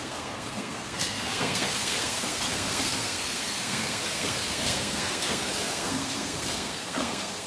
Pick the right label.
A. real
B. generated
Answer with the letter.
B